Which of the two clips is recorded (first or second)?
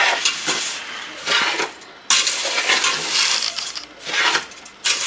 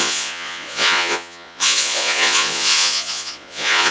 first